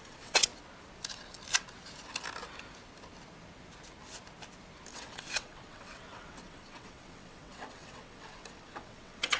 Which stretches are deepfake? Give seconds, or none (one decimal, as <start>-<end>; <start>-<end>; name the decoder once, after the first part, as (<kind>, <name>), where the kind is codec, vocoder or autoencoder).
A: 0.0-0.5 (vocoder, WaveNeXt); 4.9-9.4